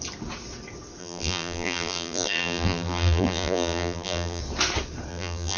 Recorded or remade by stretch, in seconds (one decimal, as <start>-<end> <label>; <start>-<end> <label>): 0.0-1.0 recorded; 1.0-4.4 remade; 4.4-5.1 recorded; 5.1-5.6 remade